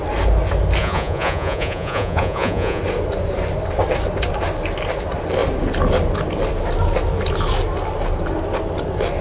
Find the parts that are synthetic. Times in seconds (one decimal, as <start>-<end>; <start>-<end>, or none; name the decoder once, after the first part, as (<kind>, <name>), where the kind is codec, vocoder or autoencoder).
0.8-2.8 (vocoder, Vocos)